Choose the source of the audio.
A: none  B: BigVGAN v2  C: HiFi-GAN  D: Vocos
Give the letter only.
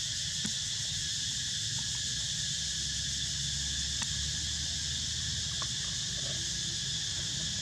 A